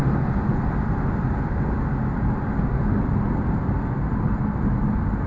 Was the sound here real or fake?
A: real